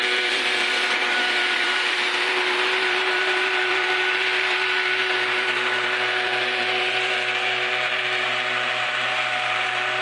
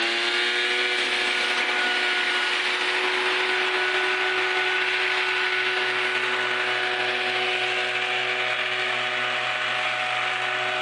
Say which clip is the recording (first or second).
second